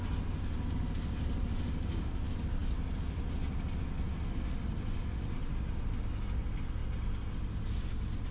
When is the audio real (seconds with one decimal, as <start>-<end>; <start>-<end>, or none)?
0.0-8.3

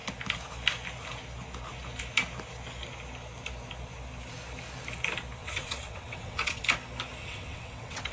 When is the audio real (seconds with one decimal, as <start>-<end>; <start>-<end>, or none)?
0.0-5.4; 6.6-7.2

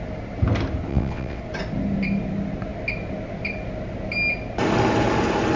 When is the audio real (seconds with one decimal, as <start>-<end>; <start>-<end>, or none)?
0.0-0.9; 1.4-5.6

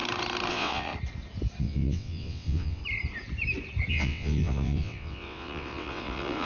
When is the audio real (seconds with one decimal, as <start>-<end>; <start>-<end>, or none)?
0.0-0.5; 0.9-1.6; 2.8-3.9

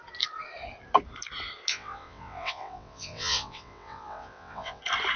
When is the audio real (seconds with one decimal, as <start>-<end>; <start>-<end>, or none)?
0.0-1.7; 4.8-5.2

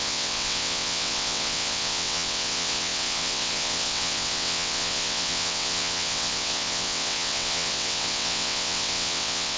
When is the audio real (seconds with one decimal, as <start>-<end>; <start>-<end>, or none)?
none

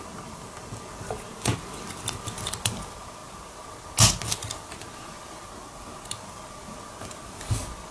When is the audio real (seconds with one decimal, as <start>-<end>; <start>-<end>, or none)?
0.0-7.9